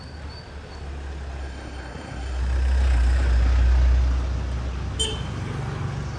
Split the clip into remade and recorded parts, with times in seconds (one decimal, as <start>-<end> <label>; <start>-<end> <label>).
0.0-1.4 recorded; 1.4-2.4 remade; 2.4-6.2 recorded